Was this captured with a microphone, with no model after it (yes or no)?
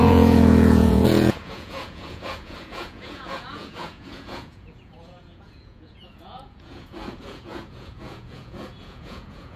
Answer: no